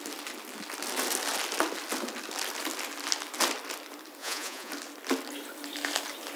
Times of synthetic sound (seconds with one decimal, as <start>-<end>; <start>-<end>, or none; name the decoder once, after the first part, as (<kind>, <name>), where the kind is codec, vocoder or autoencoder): 4.2-4.7 (vocoder, Vocos)